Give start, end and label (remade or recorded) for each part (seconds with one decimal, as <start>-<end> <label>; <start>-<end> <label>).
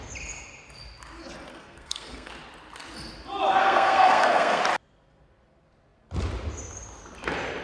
0.0-1.5 recorded; 1.5-2.3 remade; 2.3-3.6 recorded; 3.6-4.6 remade; 4.6-7.6 recorded